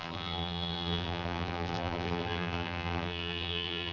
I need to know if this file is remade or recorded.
remade